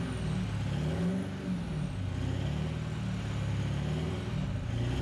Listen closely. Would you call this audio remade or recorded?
recorded